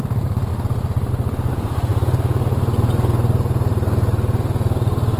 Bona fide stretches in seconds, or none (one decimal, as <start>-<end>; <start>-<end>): 0.0-5.2